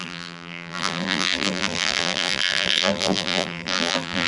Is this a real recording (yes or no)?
no